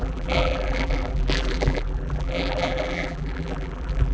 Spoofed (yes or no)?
yes